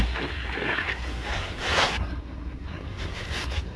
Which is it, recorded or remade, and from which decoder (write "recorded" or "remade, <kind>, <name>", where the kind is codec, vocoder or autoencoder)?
remade, codec, SNAC